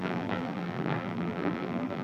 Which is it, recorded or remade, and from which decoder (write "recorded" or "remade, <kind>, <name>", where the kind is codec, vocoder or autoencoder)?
remade, vocoder, BigVGAN v2